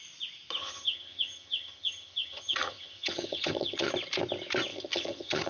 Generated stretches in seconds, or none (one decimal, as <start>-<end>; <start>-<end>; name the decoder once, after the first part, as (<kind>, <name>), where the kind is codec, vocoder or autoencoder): 0.6-3.9 (vocoder, HiFi-GAN); 4.7-5.5